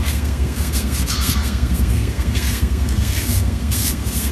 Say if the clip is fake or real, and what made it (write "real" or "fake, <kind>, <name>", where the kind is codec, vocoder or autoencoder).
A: fake, codec, SNAC